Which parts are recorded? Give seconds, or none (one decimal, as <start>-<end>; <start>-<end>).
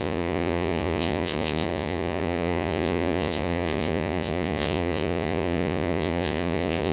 none